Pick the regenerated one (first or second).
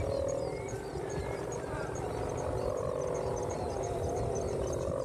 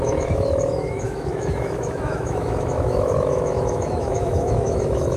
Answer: second